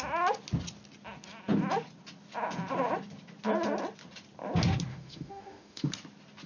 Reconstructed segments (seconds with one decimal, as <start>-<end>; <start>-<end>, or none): 4.9-5.9

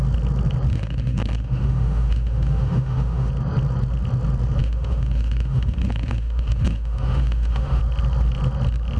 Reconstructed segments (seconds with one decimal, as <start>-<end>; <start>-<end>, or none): 0.7-3.3; 4.6-7.8

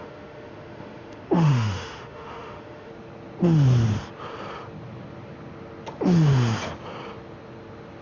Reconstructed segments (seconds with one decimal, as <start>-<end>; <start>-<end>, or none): 0.0-2.9